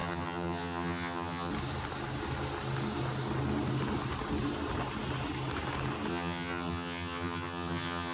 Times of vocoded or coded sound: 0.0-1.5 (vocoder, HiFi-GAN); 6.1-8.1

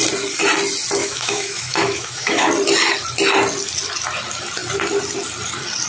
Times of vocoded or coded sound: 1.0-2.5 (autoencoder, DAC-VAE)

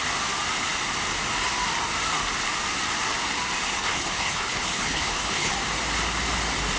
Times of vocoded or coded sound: 3.7-5.5 (codec, HILCodec)

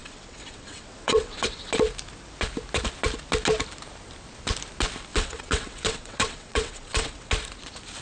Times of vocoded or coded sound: 0.0-1.7 (vocoder, WaveNeXt); 5.1-7.3

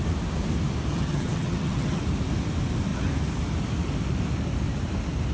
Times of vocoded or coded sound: 0.9-2.0 (vocoder, HiFi-GAN)

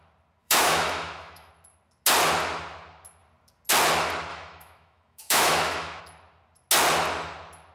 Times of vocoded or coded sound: 0.4-1.5 (autoencoder, DAC-VAE); 4.3-6.0